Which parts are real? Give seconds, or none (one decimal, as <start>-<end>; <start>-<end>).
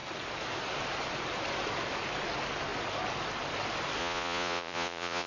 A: 0.0-4.0